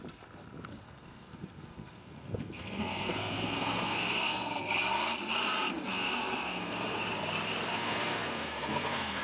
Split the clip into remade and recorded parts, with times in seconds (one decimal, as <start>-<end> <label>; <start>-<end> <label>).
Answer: 0.0-0.7 recorded; 0.7-4.6 remade; 4.6-5.9 recorded; 5.9-7.0 remade; 7.0-7.7 recorded; 7.7-9.2 remade